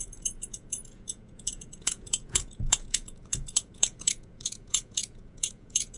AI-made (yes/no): yes